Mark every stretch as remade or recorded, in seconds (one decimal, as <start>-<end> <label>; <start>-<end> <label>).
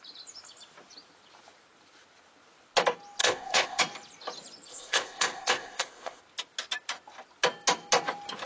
0.0-3.2 recorded; 3.2-3.8 remade; 3.8-4.7 recorded; 4.7-6.2 remade; 6.2-8.5 recorded